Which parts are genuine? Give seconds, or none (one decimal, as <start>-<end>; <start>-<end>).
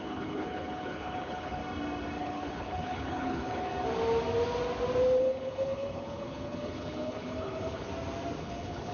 1.6-2.2; 3.7-5.2; 7.9-8.4